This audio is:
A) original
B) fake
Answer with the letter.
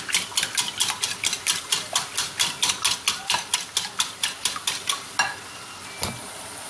A